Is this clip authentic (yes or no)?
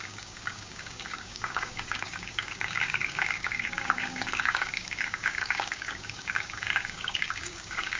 no